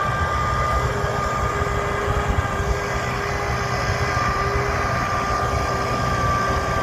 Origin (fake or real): real